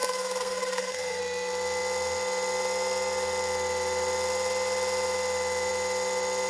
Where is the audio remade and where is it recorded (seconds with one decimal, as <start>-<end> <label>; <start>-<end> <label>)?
0.0-1.2 remade; 1.2-6.5 recorded